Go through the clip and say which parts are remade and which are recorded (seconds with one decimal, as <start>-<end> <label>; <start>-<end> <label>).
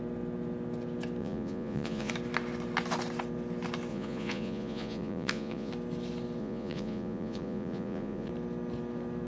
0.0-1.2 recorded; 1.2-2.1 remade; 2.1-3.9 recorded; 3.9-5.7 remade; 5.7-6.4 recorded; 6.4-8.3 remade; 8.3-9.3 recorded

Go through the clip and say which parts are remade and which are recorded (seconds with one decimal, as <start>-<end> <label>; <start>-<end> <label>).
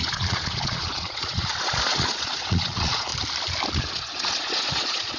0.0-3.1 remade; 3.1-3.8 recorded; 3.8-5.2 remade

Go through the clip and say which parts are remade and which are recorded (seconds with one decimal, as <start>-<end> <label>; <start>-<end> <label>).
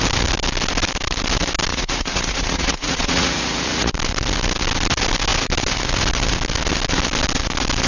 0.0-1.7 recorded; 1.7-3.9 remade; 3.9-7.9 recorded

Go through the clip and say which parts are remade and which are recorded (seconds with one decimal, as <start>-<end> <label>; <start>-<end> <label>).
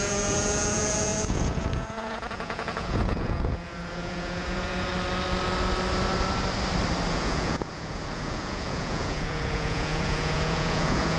0.0-4.9 remade; 4.9-7.1 recorded; 7.1-11.2 remade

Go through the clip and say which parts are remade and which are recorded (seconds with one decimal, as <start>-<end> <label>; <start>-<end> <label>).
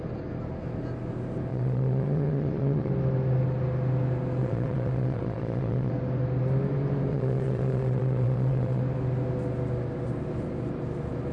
0.0-1.5 recorded; 1.5-2.9 remade; 2.9-4.4 recorded; 4.4-5.9 remade; 5.9-7.1 recorded; 7.1-8.8 remade; 8.8-11.3 recorded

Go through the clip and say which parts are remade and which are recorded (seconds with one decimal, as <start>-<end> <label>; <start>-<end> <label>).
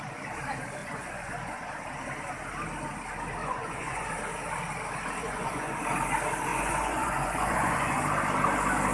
0.0-0.8 recorded; 0.8-1.6 remade; 1.6-3.4 recorded; 3.4-4.1 remade; 4.1-5.2 recorded; 5.2-5.8 remade; 5.8-6.5 recorded; 6.5-8.0 remade; 8.0-8.9 recorded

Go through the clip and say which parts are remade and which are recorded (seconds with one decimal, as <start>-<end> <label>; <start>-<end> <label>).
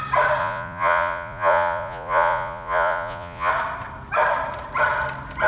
0.0-0.4 recorded; 0.4-3.5 remade; 3.5-5.5 recorded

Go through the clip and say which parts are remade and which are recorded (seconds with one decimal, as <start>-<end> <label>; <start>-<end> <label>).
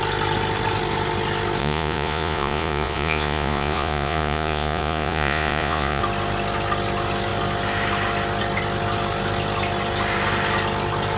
0.0-1.6 recorded; 1.6-6.0 remade; 6.0-11.2 recorded